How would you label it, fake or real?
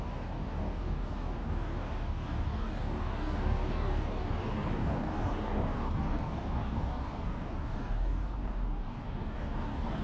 fake